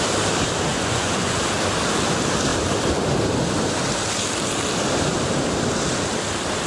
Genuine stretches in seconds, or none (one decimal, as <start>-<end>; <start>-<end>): 0.0-0.7; 1.4-6.7